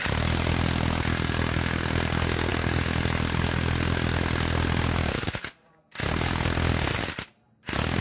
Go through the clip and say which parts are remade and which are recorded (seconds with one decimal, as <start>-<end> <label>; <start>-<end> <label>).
0.0-8.0 recorded